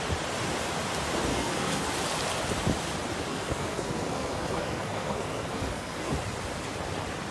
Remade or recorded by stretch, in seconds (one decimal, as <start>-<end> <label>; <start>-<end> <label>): 0.0-1.3 recorded; 1.3-1.9 remade; 1.9-3.3 recorded; 3.3-6.1 remade; 6.1-7.3 recorded